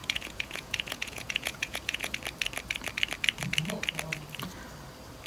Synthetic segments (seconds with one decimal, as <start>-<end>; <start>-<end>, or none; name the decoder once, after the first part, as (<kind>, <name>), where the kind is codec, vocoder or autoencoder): 0.0-2.1 (vocoder, Vocos)